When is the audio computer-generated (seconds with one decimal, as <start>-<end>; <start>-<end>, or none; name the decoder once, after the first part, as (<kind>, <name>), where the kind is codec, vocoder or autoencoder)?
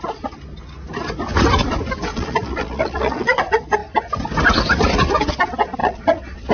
2.1-3.4 (vocoder, Vocos); 5.8-6.5